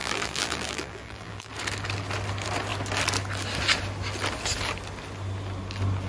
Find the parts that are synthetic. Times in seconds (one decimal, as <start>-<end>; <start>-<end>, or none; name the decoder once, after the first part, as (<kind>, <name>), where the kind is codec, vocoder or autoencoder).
0.0-1.5 (vocoder, BigVGAN v2)